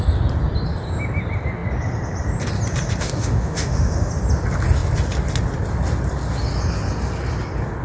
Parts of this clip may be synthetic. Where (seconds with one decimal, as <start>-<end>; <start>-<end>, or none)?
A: 3.0-4.1